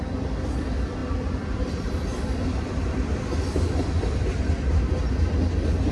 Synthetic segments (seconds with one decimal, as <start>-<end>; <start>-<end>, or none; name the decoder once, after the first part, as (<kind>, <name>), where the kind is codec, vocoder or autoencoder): 1.0-4.5 (vocoder, BigVGAN v2)